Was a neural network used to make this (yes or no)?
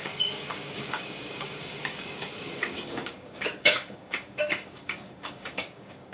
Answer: yes